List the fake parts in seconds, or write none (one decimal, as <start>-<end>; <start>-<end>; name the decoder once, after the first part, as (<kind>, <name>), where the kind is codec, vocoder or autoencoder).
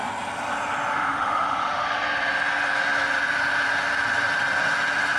0.9-1.9 (autoencoder, DAC-VAE)